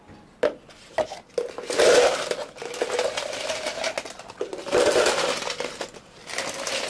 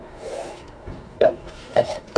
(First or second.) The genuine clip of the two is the first